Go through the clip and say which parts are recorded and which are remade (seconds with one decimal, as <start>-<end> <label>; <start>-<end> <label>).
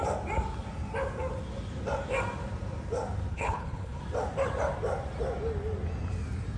0.0-3.3 recorded; 3.3-4.0 remade; 4.0-6.6 recorded